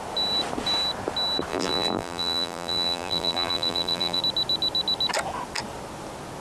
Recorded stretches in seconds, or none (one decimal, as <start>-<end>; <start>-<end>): 0.0-1.5; 4.2-6.4